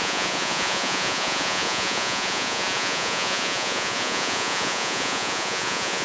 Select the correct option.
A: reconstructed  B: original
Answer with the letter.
A